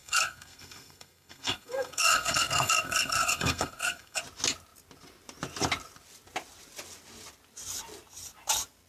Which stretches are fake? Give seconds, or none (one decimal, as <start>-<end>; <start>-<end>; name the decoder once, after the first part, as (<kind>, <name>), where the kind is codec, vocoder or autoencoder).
0.0-4.2 (codec, SNAC)

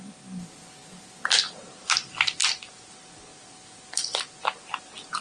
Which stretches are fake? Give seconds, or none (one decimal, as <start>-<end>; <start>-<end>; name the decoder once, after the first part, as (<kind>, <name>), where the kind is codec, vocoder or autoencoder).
none

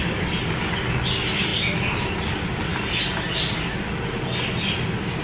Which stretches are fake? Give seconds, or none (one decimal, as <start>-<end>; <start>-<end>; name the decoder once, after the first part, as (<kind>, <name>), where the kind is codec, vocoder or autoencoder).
none